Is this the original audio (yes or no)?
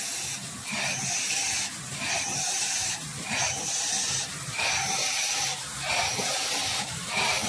yes